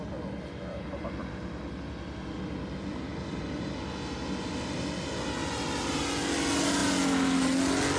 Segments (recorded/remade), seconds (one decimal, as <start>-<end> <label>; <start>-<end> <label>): 0.0-8.0 recorded